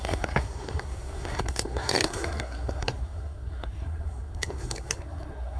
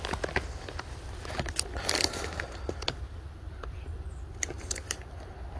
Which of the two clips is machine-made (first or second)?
first